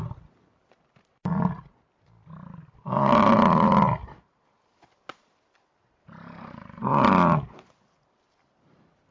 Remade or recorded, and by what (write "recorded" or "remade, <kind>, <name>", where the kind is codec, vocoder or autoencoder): recorded